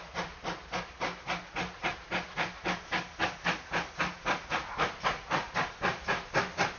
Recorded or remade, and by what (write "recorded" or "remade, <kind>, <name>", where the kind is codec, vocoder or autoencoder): recorded